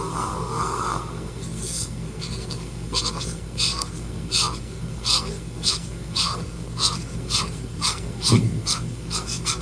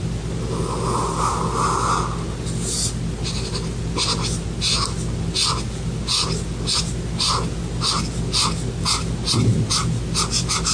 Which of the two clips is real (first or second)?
second